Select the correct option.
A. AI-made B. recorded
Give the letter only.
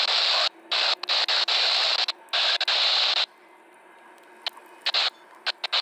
B